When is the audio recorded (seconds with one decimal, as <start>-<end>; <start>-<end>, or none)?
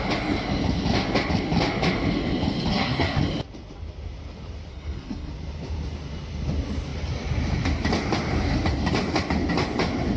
0.0-2.7; 3.2-4.7; 5.3-10.2